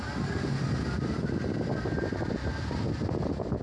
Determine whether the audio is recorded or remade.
recorded